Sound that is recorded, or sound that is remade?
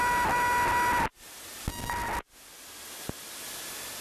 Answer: recorded